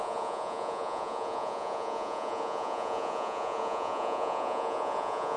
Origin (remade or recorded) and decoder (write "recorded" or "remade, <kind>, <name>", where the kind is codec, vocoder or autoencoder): remade, vocoder, Vocos